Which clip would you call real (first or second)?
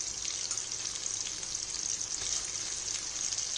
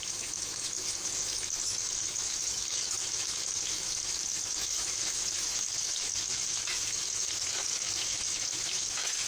first